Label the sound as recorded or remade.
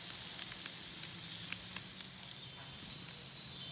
recorded